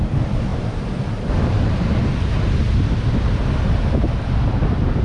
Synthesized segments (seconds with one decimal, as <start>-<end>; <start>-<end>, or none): 0.5-1.7